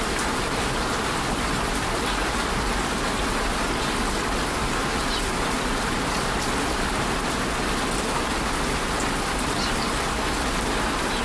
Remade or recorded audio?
recorded